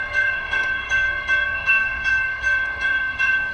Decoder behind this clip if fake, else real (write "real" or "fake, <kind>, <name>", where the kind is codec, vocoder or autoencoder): fake, codec, SNAC